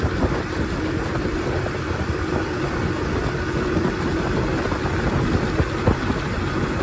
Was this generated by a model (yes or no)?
no